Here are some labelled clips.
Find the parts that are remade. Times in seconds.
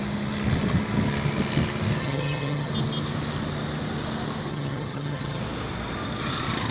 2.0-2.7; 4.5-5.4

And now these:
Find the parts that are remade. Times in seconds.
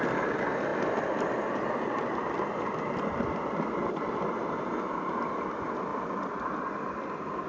0.7-4.6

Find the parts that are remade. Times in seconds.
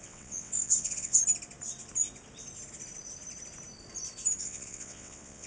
0.0-1.2; 4.4-5.5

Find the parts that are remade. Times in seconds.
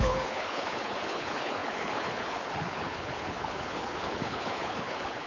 0.0-5.3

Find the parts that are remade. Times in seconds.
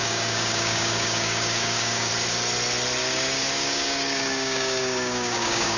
0.0-2.1; 3.0-5.8